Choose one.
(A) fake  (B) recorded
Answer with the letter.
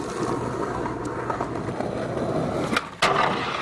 B